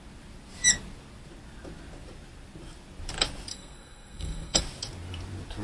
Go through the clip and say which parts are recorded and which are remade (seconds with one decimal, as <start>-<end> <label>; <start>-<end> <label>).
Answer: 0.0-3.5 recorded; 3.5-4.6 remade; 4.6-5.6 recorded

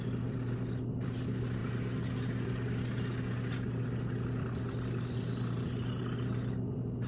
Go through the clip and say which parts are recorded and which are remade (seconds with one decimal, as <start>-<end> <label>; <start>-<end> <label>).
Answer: 0.0-7.1 recorded

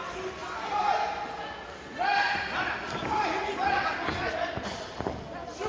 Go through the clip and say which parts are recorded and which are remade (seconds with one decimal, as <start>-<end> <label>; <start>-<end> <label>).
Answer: 0.0-5.7 recorded

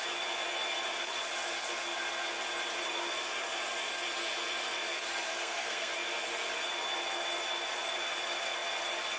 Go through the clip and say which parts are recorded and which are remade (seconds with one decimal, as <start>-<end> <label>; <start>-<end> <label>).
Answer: 0.0-5.3 recorded; 5.3-5.9 remade; 5.9-9.2 recorded

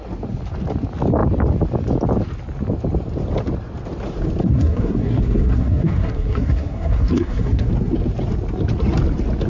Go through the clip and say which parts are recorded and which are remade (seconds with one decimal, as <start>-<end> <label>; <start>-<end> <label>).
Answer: 0.0-4.4 recorded; 4.4-7.7 remade; 7.7-9.5 recorded

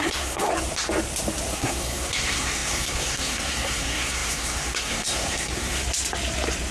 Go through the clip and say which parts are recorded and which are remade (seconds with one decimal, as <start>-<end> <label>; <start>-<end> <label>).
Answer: 0.0-0.5 remade; 0.5-1.5 recorded; 1.5-5.8 remade; 5.8-6.7 recorded